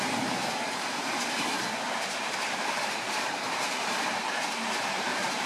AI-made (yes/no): yes